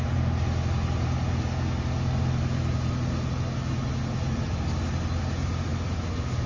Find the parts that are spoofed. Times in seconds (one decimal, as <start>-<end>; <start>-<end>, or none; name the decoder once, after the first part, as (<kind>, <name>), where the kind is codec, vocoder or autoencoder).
none